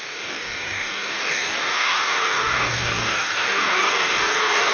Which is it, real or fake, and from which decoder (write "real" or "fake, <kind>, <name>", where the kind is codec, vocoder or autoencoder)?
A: fake, codec, DAC